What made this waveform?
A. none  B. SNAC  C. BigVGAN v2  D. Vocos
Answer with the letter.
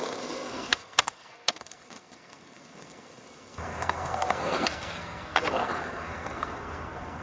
B